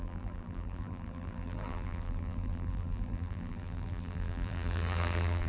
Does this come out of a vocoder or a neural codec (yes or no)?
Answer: yes